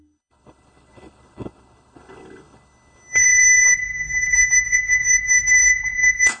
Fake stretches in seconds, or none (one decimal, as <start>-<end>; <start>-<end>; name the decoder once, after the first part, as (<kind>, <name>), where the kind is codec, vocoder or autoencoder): 0.0-6.4 (codec, HILCodec)